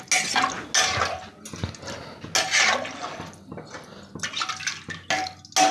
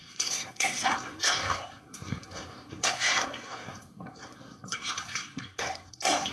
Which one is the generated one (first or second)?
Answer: second